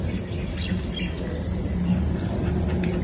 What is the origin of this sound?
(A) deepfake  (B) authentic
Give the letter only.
B